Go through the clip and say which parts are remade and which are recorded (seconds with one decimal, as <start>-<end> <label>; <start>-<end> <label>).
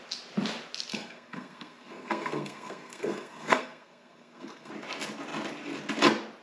0.0-0.9 recorded; 0.9-4.7 remade; 4.7-6.4 recorded